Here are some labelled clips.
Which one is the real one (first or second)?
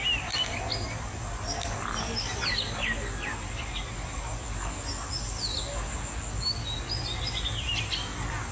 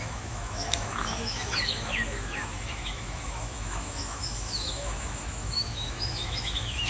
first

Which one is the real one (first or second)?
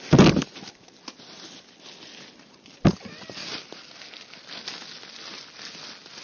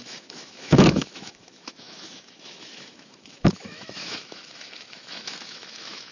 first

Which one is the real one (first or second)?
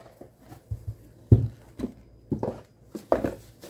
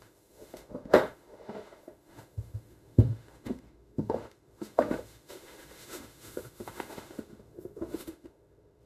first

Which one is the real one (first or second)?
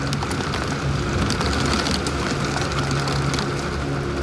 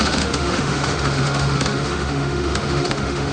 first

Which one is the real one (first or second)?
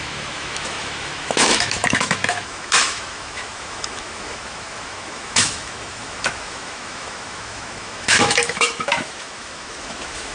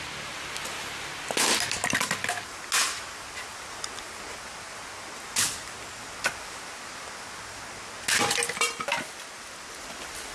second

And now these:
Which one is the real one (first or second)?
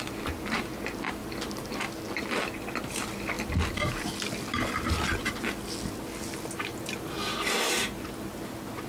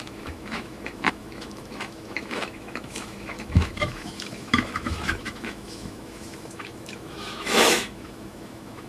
first